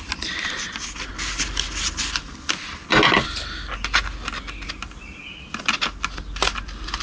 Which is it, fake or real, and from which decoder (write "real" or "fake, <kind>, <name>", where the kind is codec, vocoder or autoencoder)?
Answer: real